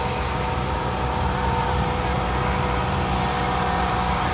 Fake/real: fake